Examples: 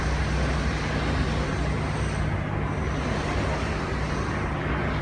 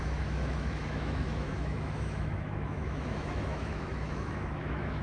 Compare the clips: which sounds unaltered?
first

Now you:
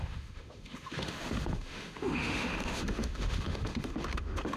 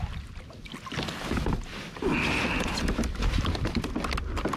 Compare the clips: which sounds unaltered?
second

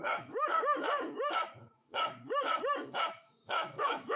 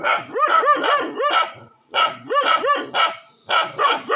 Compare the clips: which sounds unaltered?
second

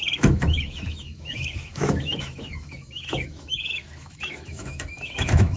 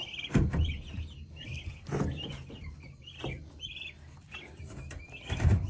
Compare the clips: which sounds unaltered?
second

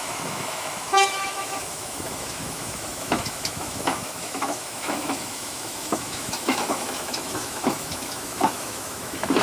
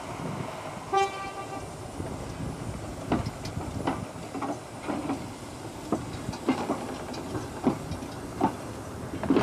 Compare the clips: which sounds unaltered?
second